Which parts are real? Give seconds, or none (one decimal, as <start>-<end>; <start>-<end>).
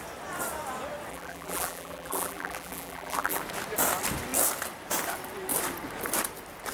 0.0-1.1; 3.4-6.7